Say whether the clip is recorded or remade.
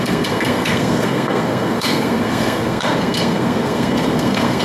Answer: remade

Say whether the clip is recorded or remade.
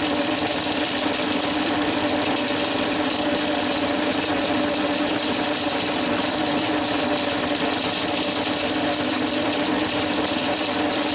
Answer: remade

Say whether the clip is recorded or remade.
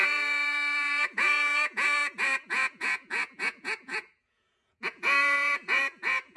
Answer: remade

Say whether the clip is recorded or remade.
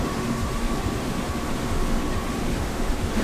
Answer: remade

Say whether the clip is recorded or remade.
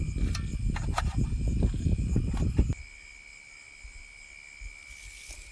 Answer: recorded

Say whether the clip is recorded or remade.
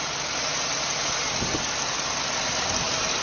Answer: recorded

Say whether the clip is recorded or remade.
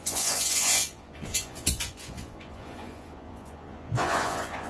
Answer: remade